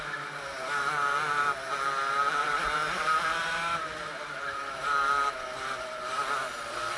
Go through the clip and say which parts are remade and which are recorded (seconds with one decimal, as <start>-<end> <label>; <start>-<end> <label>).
0.0-7.0 remade